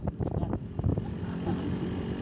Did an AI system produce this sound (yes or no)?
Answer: no